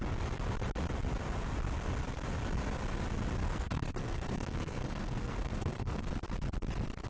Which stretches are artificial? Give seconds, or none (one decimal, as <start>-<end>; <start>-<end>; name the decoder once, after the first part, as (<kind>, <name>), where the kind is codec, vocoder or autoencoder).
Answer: 3.4-6.1 (codec, SNAC)